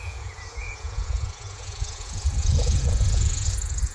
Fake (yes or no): yes